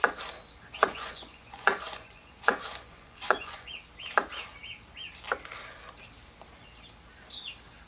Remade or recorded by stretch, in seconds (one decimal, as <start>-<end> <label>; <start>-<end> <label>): 0.0-0.7 recorded; 0.7-3.7 remade; 3.7-7.9 recorded